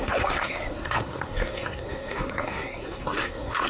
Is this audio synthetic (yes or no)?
yes